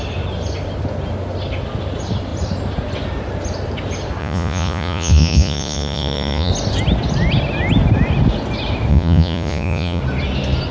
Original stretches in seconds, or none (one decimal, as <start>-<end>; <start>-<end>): 0.0-4.2; 6.5-8.9; 10.0-10.7

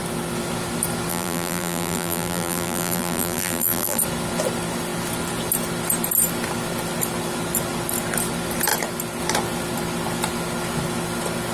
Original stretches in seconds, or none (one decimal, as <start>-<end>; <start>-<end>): 0.0-1.1; 4.0-11.5

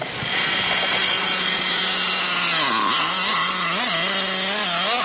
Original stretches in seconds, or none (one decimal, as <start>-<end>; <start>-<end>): 1.8-5.0

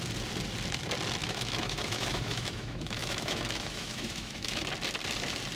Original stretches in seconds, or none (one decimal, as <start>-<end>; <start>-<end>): 0.0-1.2; 4.6-5.6

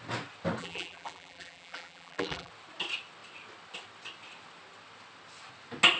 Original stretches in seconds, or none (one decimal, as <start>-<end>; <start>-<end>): 0.0-0.6; 2.5-6.0

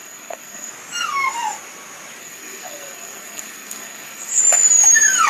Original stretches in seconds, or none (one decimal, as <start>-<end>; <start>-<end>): 0.7-2.2; 4.4-5.3

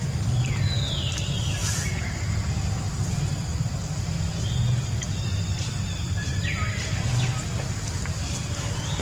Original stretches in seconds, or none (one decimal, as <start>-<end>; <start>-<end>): 0.0-1.6; 2.8-9.0

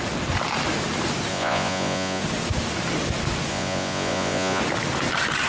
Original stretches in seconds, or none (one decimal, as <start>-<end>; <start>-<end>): 0.0-1.3; 2.2-3.5; 4.6-5.5